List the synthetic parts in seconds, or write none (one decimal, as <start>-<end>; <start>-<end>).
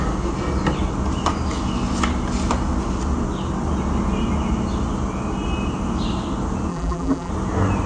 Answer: 6.7-7.3